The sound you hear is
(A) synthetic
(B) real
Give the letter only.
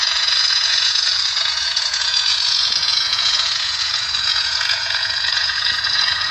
A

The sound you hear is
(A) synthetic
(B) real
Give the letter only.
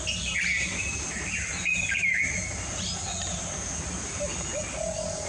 B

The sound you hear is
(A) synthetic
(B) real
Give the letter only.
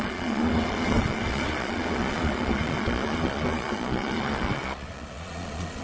A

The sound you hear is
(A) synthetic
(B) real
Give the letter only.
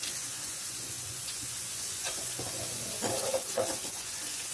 A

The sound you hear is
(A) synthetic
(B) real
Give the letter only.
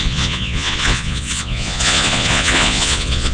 A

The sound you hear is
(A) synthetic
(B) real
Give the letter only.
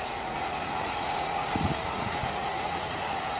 A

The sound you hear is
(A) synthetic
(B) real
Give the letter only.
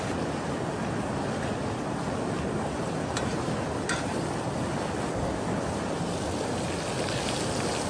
B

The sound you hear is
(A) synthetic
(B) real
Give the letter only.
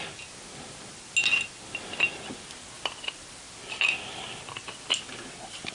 B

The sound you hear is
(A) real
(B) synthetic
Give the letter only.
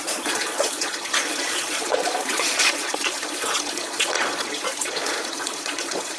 B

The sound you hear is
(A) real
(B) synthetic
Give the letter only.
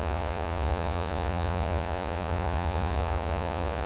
B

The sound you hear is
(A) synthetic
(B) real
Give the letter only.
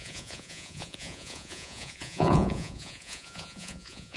A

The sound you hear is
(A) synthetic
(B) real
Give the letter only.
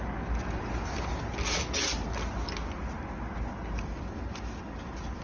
B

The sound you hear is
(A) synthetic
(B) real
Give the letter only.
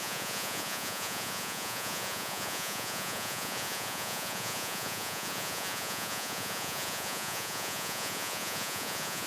A